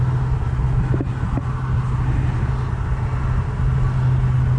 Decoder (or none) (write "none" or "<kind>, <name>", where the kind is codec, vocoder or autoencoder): none